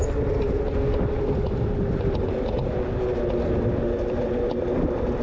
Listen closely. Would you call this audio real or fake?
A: real